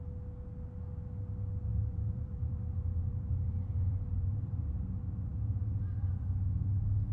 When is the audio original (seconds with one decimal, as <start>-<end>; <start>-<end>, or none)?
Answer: 0.0-1.7; 4.6-7.1